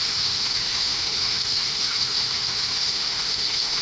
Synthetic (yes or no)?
yes